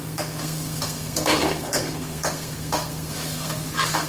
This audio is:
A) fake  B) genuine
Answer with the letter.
A